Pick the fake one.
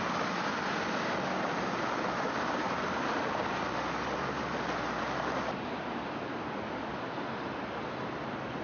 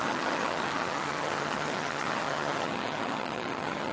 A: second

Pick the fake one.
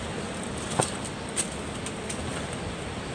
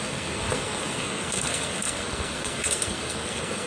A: second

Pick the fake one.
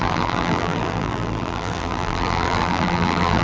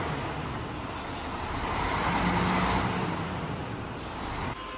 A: first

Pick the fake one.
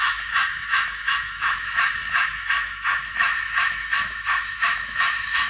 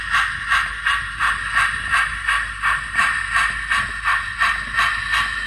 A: first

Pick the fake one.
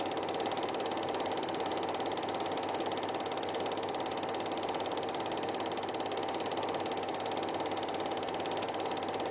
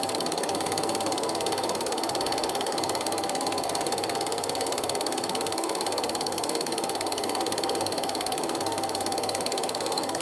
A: second